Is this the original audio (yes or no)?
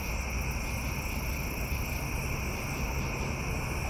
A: yes